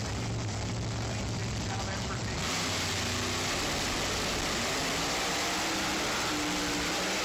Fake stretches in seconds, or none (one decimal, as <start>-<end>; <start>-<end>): none